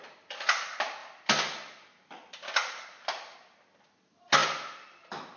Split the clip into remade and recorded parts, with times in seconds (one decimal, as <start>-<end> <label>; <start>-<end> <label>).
0.0-5.4 recorded